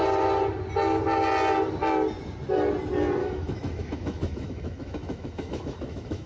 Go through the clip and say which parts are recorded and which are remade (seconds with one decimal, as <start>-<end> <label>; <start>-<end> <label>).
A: 0.0-3.2 recorded; 3.2-6.3 remade

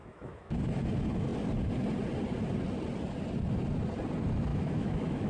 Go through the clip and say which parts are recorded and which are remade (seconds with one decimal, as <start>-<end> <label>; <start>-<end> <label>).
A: 0.0-0.6 remade; 0.6-4.5 recorded; 4.5-5.3 remade

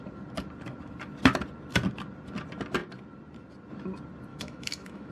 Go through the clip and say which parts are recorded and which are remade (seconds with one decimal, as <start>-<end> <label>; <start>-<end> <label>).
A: 0.0-4.3 recorded; 4.3-5.1 remade

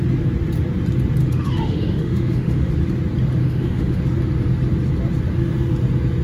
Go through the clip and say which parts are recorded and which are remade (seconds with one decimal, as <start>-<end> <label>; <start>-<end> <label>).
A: 0.0-1.2 recorded; 1.2-2.7 remade; 2.7-3.4 recorded; 3.4-4.0 remade; 4.0-6.2 recorded

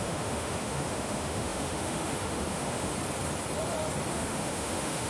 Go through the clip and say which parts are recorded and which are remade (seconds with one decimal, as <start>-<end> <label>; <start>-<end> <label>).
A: 0.0-2.9 remade; 2.9-4.1 recorded; 4.1-5.1 remade

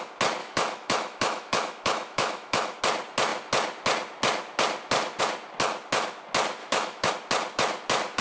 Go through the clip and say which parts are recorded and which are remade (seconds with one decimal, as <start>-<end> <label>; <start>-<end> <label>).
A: 0.0-0.4 recorded; 0.4-2.8 remade; 2.8-6.6 recorded; 6.6-7.1 remade; 7.1-8.2 recorded